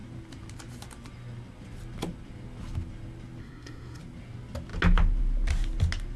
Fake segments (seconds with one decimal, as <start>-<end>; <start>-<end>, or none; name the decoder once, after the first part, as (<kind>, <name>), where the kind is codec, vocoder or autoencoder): 3.4-4.0 (codec, SNAC)